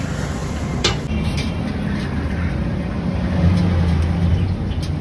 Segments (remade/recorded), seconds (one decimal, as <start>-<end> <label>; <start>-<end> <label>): 0.0-5.0 recorded